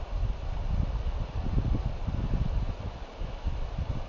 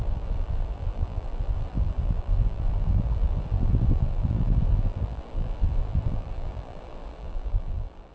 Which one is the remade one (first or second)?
second